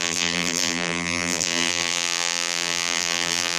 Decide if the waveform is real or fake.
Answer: fake